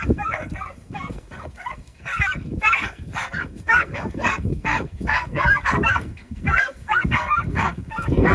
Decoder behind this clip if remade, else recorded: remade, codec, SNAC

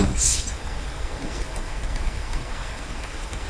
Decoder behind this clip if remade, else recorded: remade, codec, SNAC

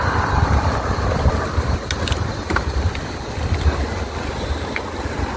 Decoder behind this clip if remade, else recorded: recorded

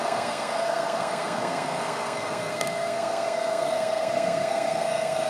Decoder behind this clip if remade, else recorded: remade, codec, SNAC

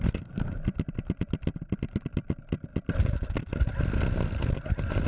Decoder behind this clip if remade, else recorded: recorded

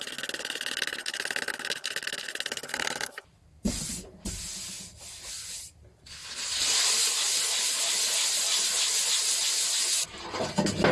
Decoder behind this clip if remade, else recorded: recorded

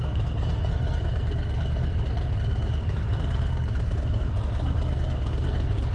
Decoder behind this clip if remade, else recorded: remade, codec, SNAC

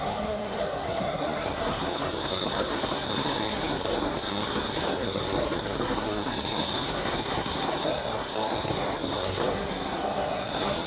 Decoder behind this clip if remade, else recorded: remade, codec, SNAC